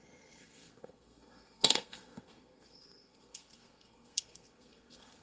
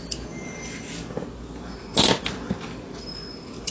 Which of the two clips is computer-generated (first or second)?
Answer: first